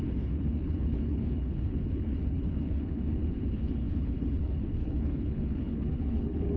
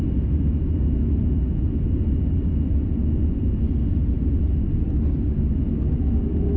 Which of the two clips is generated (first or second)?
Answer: first